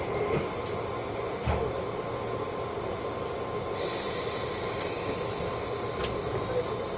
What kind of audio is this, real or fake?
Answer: real